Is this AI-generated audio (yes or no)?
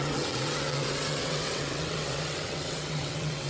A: yes